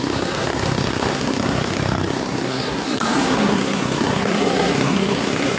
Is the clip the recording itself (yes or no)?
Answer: no